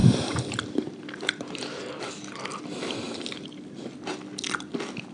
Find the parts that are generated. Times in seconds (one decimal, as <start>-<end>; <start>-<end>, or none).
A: none